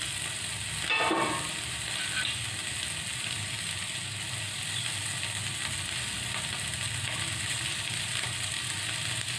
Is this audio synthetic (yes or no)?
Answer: no